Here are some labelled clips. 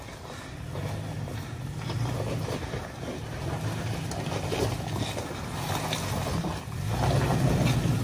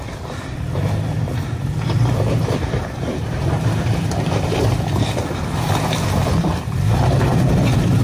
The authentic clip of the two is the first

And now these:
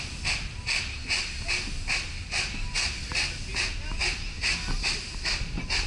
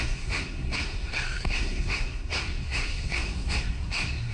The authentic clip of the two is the first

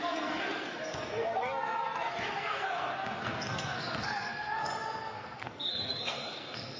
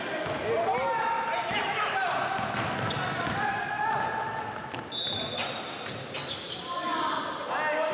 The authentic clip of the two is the second